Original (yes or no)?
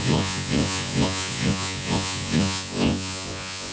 no